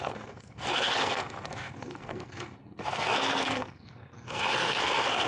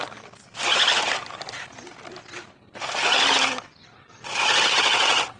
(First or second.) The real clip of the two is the second